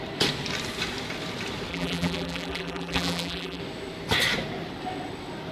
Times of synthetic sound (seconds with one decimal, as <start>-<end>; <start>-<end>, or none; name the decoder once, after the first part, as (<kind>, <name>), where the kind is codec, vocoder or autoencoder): 1.7-3.6 (vocoder, BigVGAN v2)